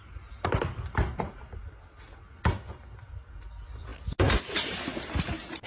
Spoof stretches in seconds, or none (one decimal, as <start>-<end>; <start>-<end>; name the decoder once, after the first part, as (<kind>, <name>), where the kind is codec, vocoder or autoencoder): none